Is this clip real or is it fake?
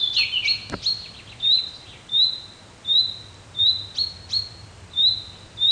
real